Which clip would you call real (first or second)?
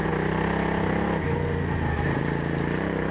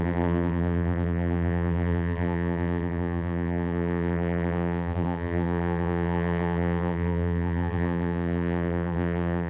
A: first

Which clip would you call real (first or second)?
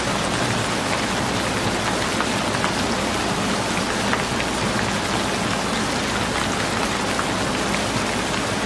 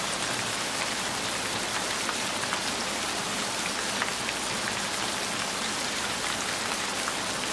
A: first